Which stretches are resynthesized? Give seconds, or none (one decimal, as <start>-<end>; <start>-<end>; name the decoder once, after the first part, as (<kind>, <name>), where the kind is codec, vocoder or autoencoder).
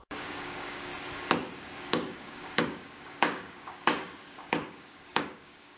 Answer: 0.0-0.9 (codec, DAC); 1.8-5.8